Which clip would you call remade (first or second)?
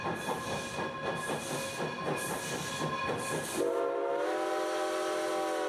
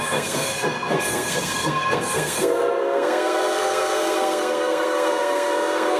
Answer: second